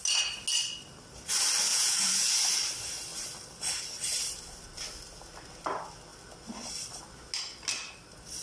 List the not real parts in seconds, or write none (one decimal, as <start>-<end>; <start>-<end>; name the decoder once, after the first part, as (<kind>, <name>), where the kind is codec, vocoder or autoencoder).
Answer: 1.7-2.4 (vocoder, Vocos)